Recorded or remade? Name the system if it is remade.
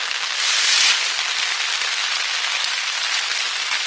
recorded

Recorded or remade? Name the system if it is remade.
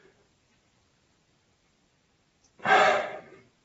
recorded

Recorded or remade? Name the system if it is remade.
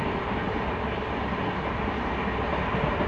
recorded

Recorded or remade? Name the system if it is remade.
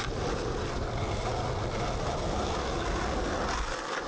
recorded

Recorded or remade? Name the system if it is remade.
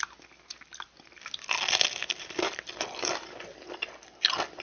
recorded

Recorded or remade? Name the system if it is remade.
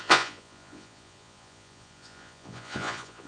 remade, vocoder, Vocos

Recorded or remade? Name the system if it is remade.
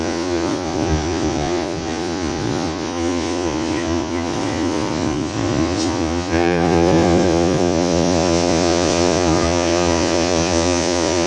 remade, vocoder, Vocos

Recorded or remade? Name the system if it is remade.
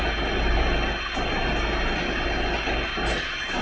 recorded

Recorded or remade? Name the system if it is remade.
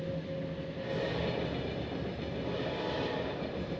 recorded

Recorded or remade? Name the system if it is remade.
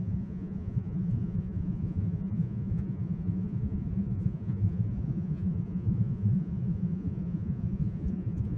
remade, vocoder, Vocos